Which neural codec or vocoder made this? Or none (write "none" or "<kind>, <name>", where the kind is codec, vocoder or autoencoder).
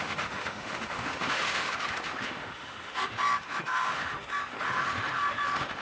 autoencoder, DAC-VAE